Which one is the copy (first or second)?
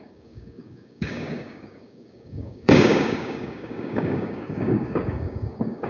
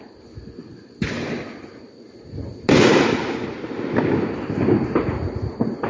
first